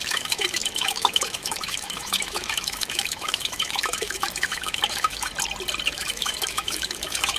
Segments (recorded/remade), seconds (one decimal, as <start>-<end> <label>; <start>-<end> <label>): 0.0-5.3 remade; 5.3-5.9 recorded; 5.9-7.4 remade